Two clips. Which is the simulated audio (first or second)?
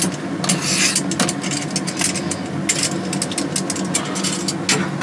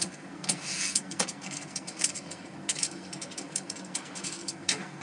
second